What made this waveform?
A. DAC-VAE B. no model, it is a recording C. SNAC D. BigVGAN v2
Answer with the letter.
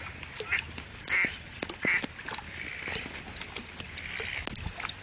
B